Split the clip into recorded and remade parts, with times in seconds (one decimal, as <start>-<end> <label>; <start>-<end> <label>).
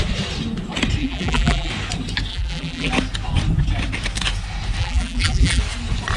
0.0-1.0 recorded; 1.0-1.7 remade; 1.7-2.3 recorded; 2.3-2.9 remade; 2.9-4.8 recorded; 4.8-5.6 remade; 5.6-6.2 recorded